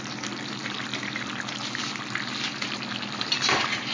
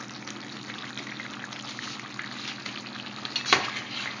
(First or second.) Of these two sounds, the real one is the second